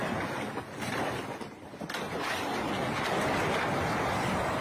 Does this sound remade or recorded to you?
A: recorded